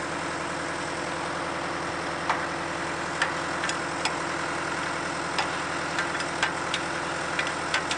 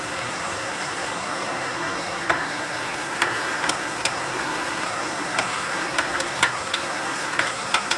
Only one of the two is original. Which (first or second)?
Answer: first